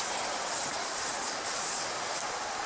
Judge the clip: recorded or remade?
recorded